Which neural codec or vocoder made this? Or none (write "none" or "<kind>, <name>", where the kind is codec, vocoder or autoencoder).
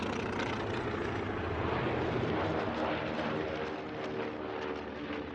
none